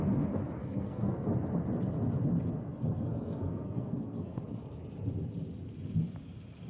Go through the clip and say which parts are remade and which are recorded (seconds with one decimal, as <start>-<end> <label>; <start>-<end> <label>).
0.0-0.6 recorded; 0.6-1.3 remade; 1.3-2.7 recorded; 2.7-4.4 remade; 4.4-6.7 recorded

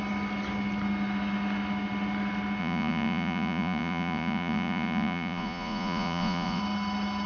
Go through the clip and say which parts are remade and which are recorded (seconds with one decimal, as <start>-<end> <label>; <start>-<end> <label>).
0.0-2.6 recorded; 2.6-6.6 remade; 6.6-7.3 recorded

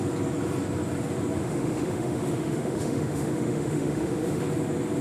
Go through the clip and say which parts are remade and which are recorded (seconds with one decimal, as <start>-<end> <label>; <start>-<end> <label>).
0.0-1.4 recorded; 1.4-4.4 remade; 4.4-5.0 recorded

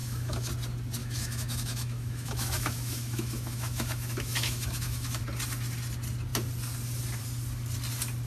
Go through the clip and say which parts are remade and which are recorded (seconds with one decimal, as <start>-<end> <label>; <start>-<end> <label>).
0.0-0.5 remade; 0.5-1.0 recorded; 1.0-5.2 remade; 5.2-8.3 recorded

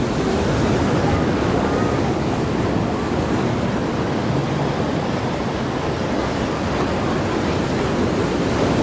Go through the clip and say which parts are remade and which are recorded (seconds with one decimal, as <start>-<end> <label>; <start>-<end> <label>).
0.0-1.1 recorded; 1.1-3.5 remade; 3.5-8.8 recorded